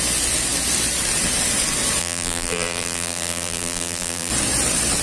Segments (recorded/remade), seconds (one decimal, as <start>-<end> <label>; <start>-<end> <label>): 0.0-2.0 recorded; 2.0-4.3 remade; 4.3-5.0 recorded